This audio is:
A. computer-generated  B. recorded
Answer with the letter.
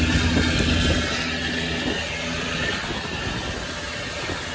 B